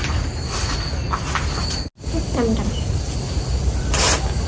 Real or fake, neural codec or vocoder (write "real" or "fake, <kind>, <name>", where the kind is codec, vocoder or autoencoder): real